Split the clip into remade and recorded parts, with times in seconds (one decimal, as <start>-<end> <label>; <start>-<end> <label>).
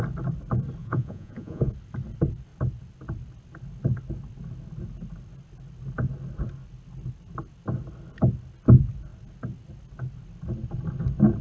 0.0-0.8 recorded; 0.8-1.7 remade; 1.7-11.4 recorded